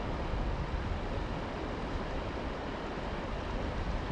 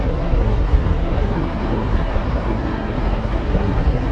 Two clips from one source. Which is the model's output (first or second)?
second